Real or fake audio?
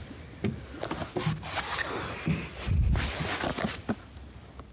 real